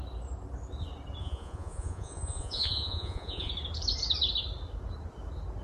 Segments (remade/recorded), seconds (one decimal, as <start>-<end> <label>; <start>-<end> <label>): 0.0-1.2 recorded; 1.2-3.5 remade; 3.5-5.6 recorded